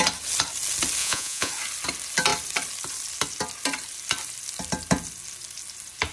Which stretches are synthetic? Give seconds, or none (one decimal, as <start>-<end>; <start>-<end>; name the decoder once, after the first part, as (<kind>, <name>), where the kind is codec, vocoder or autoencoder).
1.0-1.5 (vocoder, Vocos)